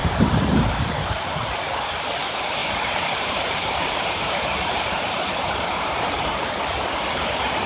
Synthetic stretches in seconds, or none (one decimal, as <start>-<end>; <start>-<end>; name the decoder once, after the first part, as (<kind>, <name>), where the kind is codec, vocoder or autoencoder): 0.0-0.9 (vocoder, BigVGAN v2); 2.6-6.5